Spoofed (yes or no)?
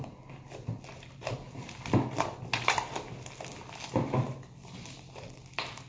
no